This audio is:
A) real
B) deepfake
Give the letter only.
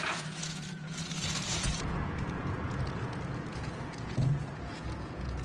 B